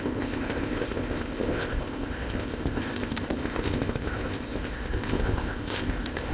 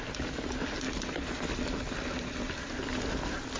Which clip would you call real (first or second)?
second